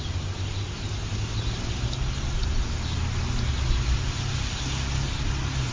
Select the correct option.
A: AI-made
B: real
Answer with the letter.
B